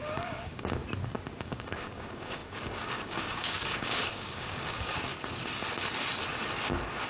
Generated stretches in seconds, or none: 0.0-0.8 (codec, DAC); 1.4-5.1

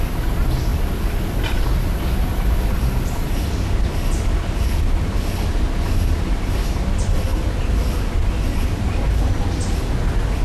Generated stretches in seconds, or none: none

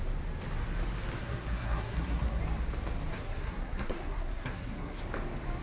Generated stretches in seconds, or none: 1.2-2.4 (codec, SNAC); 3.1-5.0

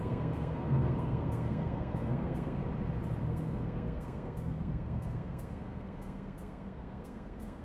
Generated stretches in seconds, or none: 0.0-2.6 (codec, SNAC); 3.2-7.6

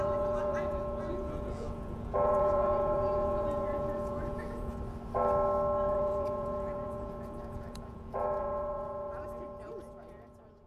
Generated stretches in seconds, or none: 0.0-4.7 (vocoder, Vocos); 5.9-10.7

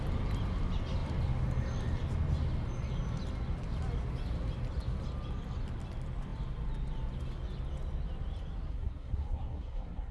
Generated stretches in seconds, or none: 8.7-10.1 (codec, SNAC)

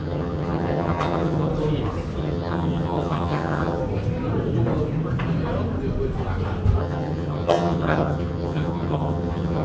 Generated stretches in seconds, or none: 0.0-1.5 (vocoder, HiFi-GAN); 2.2-3.8; 6.8-9.6